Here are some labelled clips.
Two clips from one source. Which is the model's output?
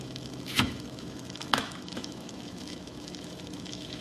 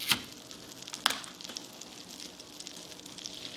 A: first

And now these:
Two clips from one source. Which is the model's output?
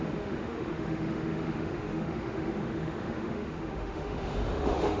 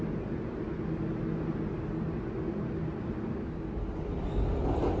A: first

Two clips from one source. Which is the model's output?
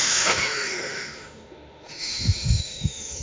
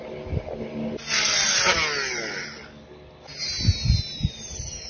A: first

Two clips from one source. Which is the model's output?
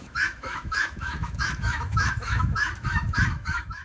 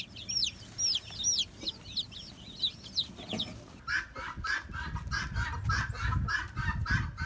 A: first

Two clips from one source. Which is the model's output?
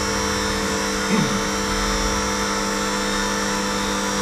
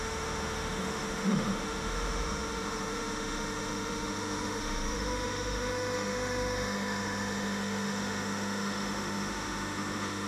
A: second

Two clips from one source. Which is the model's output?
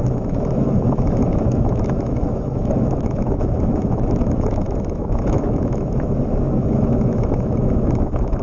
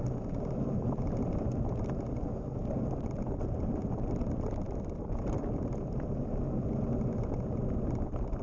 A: first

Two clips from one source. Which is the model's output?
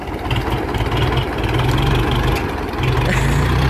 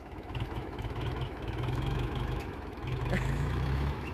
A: second